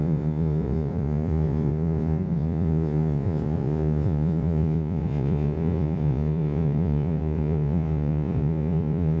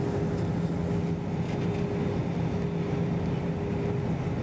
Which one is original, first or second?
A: second